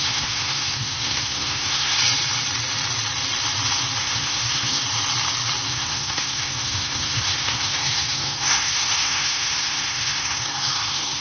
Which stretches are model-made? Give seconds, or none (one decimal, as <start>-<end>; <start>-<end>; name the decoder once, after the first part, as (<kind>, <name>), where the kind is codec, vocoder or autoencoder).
0.0-2.0 (codec, SNAC); 4.0-4.8; 5.7-11.2